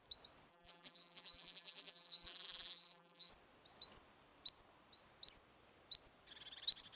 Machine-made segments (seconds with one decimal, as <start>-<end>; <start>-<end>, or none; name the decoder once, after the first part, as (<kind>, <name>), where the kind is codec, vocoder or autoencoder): 0.5-3.3 (vocoder, BigVGAN v2)